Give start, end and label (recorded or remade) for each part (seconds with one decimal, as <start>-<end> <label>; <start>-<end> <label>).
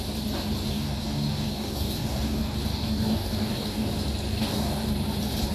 0.0-0.7 recorded; 0.7-3.9 remade; 3.9-4.3 recorded; 4.3-4.9 remade; 4.9-5.5 recorded